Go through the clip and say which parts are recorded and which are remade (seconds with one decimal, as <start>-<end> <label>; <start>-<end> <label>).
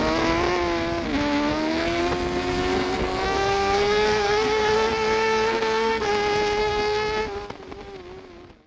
0.0-1.5 recorded; 1.5-2.0 remade; 2.0-2.5 recorded; 2.5-6.1 remade; 6.1-6.6 recorded; 6.6-7.2 remade; 7.2-8.7 recorded